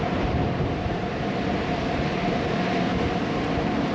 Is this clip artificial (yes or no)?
no